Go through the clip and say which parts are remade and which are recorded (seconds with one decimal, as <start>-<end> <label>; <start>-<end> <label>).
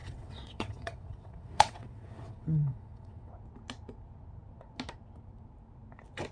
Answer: 0.0-3.3 remade; 3.3-6.3 recorded